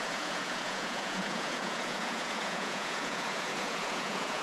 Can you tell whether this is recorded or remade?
remade